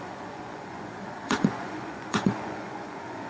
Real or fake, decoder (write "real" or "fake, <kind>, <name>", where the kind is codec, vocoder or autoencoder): fake, vocoder, Vocos